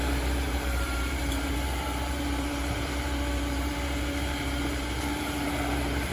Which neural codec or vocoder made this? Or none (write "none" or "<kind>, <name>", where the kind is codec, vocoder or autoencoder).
vocoder, BigVGAN v2